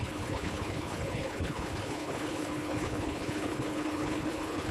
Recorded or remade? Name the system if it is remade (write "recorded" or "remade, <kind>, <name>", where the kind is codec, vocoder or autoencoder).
remade, codec, HILCodec